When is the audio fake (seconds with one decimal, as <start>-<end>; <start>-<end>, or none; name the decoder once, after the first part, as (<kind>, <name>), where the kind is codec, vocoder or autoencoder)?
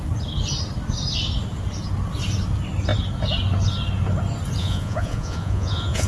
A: 4.6-6.1 (vocoder, Vocos)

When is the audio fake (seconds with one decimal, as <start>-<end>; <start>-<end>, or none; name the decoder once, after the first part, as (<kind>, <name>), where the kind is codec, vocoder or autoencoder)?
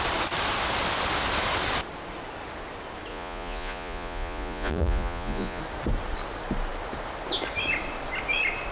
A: 3.1-5.6 (vocoder, Vocos)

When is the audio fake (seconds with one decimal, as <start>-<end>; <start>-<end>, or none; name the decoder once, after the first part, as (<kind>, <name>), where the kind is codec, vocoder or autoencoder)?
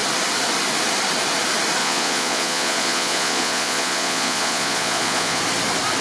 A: 1.8-5.4 (vocoder, Vocos)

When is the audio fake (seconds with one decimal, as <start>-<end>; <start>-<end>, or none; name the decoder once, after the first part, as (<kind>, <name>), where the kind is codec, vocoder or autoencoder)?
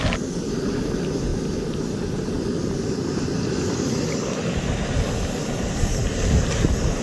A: none